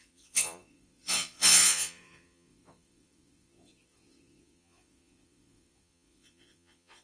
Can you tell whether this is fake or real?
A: fake